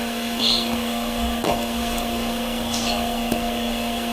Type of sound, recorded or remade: remade